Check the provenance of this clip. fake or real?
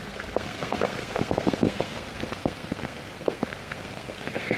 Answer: fake